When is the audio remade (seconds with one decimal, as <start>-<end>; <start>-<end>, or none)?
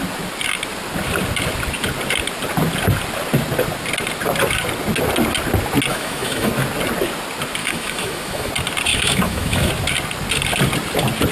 5.9-6.5; 7.6-8.5; 8.9-9.7